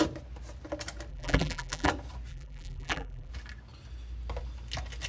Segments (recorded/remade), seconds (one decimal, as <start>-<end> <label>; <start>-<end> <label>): 0.0-1.1 recorded; 1.1-1.9 remade; 1.9-2.3 recorded; 2.3-3.3 remade; 3.3-5.1 recorded